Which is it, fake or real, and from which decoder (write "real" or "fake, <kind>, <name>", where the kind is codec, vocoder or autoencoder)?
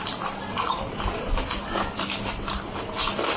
real